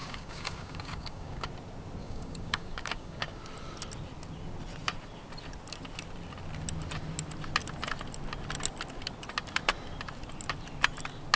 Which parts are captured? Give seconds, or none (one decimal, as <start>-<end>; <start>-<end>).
1.5-2.0; 3.4-11.4